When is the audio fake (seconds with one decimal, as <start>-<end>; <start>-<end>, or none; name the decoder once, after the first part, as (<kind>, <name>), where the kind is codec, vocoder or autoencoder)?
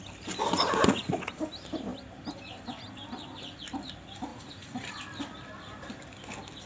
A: 0.4-1.3 (vocoder, Vocos); 4.3-4.9